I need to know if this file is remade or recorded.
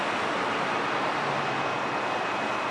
recorded